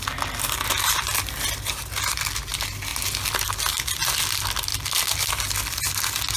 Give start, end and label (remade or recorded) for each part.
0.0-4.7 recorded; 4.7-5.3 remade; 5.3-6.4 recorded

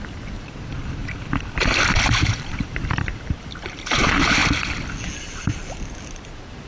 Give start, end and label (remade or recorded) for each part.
0.0-1.0 remade; 1.0-2.2 recorded; 2.2-4.4 remade; 4.4-5.2 recorded; 5.2-6.7 remade

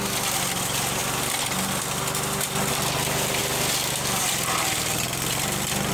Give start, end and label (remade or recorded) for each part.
0.0-5.9 recorded

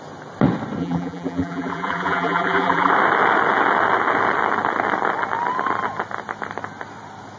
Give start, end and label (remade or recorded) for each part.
0.0-0.8 recorded; 0.8-2.9 remade; 2.9-7.4 recorded

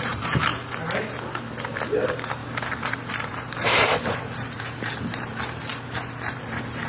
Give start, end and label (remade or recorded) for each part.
0.0-0.5 remade; 0.5-2.0 recorded; 2.0-2.4 remade; 2.4-3.1 recorded; 3.1-6.9 remade